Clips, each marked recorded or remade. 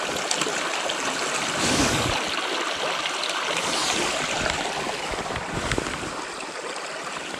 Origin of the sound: recorded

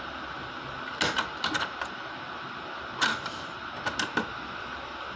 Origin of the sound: recorded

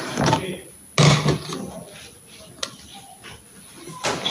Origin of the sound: recorded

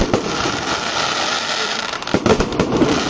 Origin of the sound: recorded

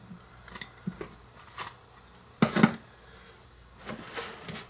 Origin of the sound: recorded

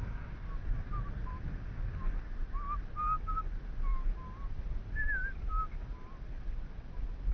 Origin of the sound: recorded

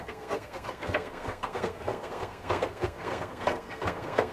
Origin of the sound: remade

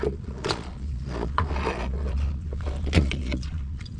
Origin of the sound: remade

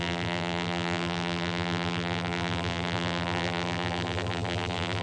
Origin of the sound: remade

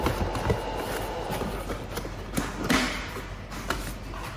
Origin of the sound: recorded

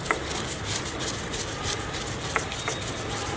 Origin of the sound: recorded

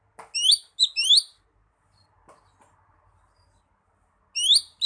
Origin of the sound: recorded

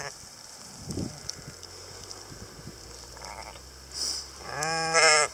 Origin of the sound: remade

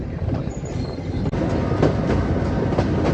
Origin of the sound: recorded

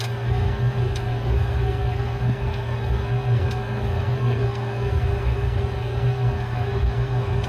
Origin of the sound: remade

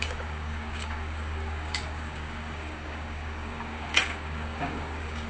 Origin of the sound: remade